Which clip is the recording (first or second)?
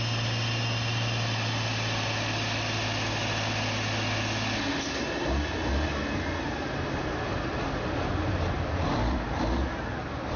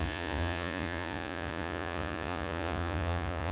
first